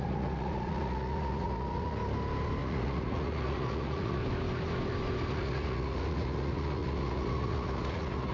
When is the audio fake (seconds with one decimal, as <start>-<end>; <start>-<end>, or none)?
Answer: 0.0-2.0; 2.6-4.2; 5.3-8.3